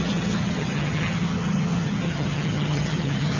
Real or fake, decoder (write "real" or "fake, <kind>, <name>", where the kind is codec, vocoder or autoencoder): fake, vocoder, HiFi-GAN